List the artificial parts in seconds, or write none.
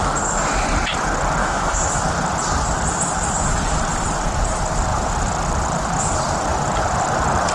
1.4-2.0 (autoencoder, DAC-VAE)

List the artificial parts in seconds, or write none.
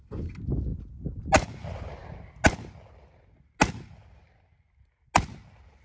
none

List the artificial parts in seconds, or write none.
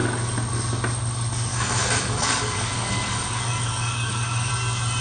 1.5-4.5 (codec, DAC)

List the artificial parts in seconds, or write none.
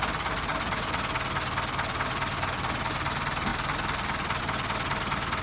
none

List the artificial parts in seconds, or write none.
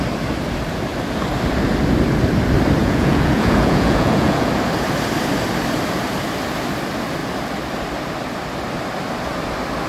2.8-4.5 (vocoder, Vocos)